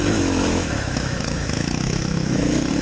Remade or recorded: remade